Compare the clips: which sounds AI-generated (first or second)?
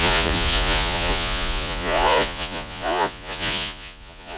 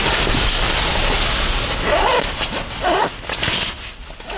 first